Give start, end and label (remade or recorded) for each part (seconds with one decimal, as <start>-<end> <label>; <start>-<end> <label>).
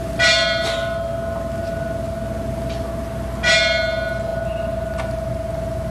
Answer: 0.0-5.9 recorded